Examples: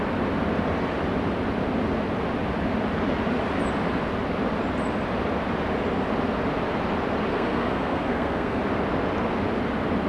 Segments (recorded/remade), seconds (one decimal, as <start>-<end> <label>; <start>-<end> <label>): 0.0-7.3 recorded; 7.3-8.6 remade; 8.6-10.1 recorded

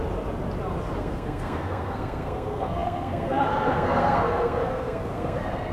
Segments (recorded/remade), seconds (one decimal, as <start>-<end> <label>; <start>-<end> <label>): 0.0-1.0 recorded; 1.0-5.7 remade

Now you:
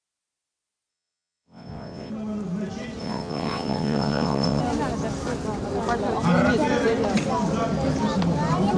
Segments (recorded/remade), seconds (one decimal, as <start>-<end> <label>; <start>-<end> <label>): 0.0-0.9 recorded; 0.9-2.1 remade; 2.1-3.0 recorded; 3.0-4.6 remade; 4.6-8.8 recorded